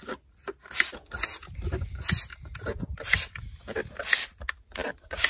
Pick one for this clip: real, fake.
real